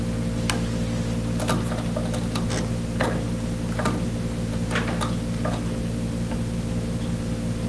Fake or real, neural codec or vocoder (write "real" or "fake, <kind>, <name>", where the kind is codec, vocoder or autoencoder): real